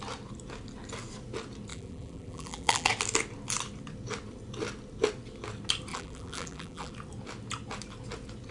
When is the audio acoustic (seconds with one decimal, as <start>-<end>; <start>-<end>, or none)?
0.0-1.7; 2.9-5.9; 6.9-8.5